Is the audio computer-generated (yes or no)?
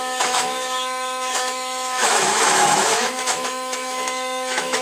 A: yes